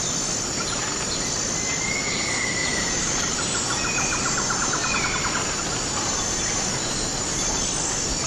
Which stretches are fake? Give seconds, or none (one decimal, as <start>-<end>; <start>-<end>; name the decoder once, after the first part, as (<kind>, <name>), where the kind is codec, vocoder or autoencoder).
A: 2.6-3.2 (vocoder, BigVGAN v2); 4.1-7.6